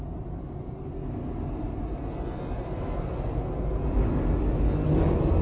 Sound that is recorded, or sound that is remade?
recorded